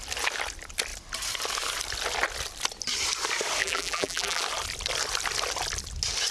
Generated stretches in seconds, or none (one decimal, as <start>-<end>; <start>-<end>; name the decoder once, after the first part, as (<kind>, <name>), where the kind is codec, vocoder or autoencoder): 3.6-4.4 (vocoder, BigVGAN v2)